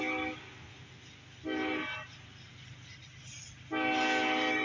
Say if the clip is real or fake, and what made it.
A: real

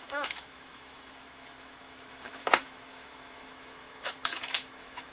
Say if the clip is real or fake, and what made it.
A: fake, autoencoder, DAC-VAE